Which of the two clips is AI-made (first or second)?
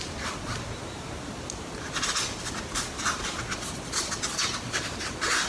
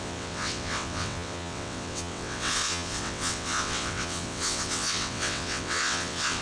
second